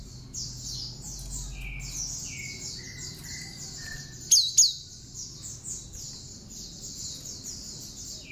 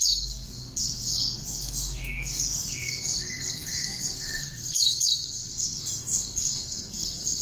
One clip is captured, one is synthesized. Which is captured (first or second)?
first